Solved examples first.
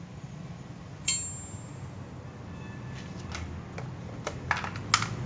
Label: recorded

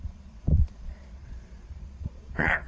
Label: remade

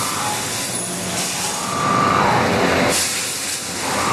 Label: recorded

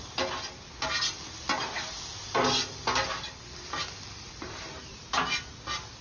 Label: recorded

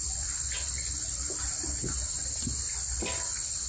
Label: recorded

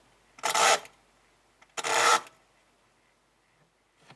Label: recorded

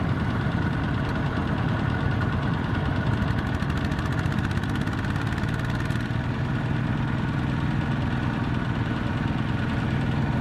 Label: recorded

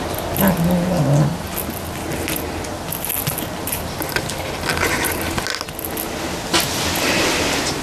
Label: recorded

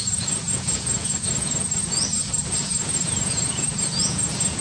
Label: remade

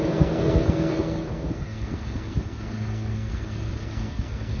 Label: remade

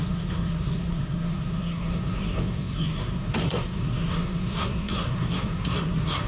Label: remade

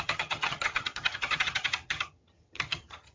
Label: remade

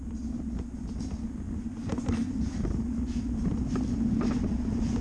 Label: recorded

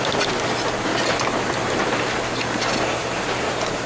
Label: recorded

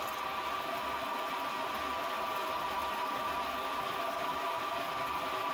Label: recorded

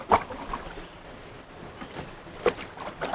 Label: recorded